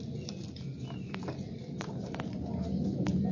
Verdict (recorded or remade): recorded